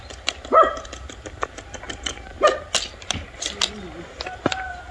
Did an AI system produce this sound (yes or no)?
no